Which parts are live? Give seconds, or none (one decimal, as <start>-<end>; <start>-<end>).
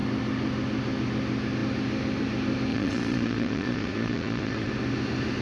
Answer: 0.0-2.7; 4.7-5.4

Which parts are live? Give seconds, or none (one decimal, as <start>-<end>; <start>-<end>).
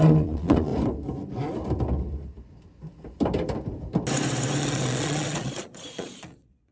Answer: 0.7-4.6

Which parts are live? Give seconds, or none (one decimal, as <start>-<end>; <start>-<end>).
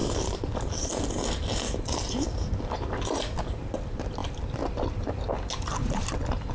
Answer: 0.0-6.5